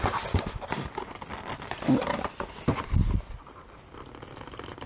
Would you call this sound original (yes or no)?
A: yes